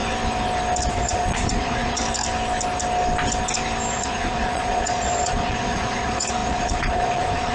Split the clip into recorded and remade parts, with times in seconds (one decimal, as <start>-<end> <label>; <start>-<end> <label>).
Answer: 0.0-0.9 recorded; 0.9-2.0 remade; 2.0-3.9 recorded; 3.9-7.5 remade